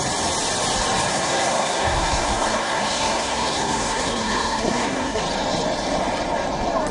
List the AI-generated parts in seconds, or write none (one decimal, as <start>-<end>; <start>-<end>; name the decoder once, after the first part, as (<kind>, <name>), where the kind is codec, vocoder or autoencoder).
1.1-5.2 (codec, SNAC)